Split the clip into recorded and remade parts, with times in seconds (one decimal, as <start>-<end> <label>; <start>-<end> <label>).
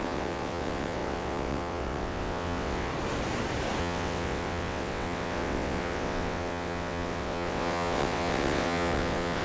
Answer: 0.0-2.9 remade; 2.9-3.8 recorded; 3.8-9.4 remade